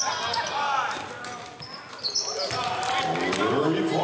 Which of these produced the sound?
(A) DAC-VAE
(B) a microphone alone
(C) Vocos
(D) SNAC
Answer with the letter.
B